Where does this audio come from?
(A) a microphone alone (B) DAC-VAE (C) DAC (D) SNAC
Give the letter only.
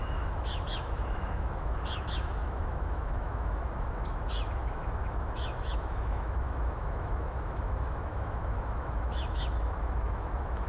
B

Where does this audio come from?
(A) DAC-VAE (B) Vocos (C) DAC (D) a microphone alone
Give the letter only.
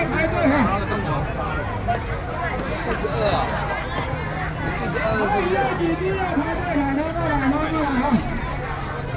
D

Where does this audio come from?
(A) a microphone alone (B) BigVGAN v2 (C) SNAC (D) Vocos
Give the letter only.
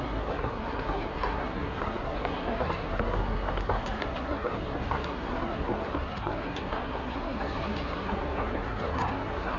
C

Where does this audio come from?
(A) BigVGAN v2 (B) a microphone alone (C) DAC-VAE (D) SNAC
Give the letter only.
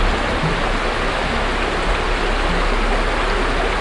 B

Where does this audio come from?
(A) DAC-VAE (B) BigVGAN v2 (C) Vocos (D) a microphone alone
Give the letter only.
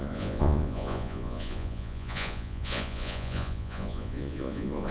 C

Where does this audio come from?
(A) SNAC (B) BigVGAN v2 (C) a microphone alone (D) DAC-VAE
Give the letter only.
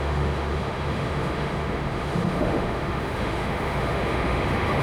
D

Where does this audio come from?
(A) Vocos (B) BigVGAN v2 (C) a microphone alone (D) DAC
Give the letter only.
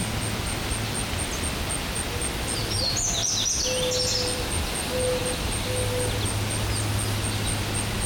C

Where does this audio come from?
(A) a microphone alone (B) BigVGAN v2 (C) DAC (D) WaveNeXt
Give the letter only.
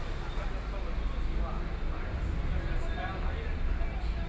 A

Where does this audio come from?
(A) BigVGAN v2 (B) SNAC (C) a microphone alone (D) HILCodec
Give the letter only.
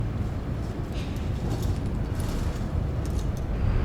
C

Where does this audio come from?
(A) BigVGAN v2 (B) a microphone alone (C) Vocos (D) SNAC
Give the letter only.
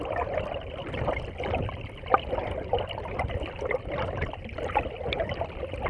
B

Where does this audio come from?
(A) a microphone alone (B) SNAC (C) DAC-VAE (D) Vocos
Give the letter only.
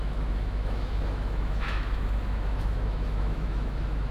C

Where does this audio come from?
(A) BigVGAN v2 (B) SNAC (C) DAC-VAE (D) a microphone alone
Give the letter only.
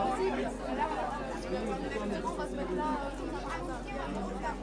D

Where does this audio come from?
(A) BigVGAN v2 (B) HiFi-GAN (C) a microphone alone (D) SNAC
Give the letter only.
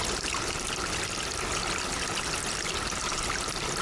C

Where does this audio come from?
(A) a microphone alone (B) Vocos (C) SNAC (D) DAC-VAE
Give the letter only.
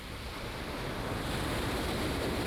A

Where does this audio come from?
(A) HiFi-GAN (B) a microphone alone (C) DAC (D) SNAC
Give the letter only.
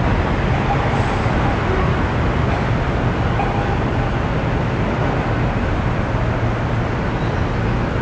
B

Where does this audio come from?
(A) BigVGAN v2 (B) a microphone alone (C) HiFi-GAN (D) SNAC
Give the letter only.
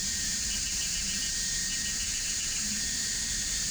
A